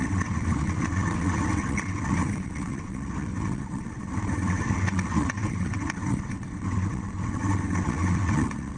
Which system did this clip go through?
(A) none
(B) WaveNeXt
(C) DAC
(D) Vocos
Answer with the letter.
B